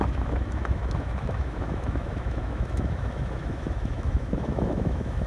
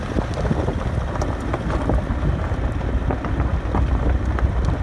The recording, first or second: second